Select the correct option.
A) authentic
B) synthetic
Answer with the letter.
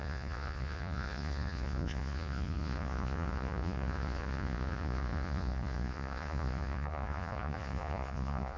B